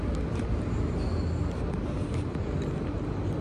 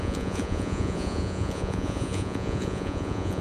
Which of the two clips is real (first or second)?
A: first